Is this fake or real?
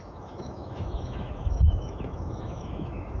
fake